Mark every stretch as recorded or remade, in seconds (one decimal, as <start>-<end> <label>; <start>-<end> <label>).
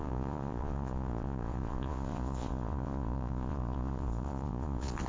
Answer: 0.0-5.1 remade